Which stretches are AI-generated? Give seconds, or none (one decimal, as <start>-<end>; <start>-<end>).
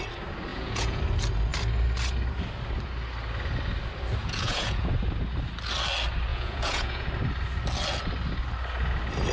0.5-1.0; 4.2-4.8; 6.3-7.1